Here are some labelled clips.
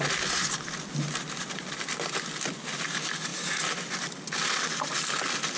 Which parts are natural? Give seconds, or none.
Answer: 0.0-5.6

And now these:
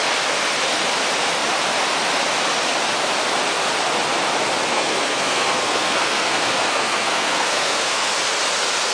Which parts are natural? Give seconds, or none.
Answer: 0.0-4.7; 8.1-8.9

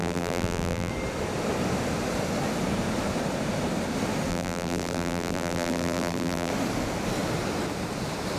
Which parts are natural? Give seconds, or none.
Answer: 0.9-4.3; 6.5-8.4

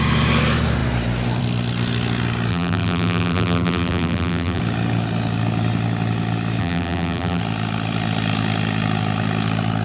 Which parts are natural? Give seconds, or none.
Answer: 0.0-2.5; 4.6-6.6; 7.4-9.8